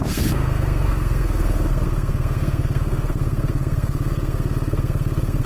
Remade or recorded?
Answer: remade